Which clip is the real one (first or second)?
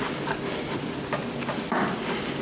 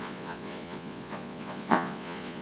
first